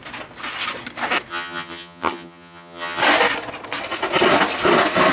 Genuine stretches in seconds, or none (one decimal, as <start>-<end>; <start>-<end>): 0.0-1.3; 3.0-5.1